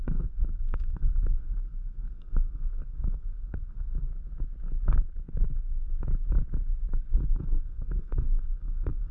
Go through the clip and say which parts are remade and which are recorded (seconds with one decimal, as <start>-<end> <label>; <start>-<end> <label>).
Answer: 0.0-4.1 remade; 4.1-7.1 recorded; 7.1-9.1 remade